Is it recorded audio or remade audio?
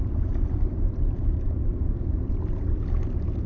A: recorded